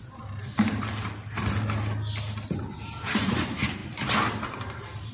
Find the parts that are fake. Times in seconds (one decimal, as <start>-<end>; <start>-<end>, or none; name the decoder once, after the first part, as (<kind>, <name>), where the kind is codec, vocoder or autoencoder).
0.0-0.9 (vocoder, BigVGAN v2); 3.2-5.1